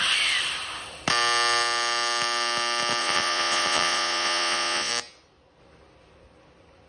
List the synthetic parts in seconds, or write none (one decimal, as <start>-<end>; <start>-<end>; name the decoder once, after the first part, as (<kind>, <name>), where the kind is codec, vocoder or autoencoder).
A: 3.0-4.9 (vocoder, Vocos)